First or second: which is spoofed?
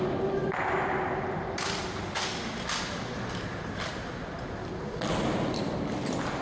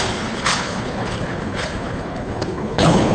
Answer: second